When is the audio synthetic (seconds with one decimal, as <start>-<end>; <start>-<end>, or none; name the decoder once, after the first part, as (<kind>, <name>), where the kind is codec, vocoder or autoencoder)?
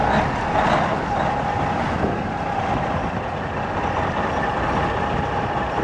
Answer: none